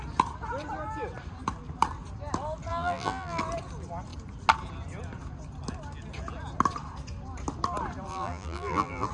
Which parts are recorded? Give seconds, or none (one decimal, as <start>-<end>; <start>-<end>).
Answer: 0.0-2.7; 3.4-8.1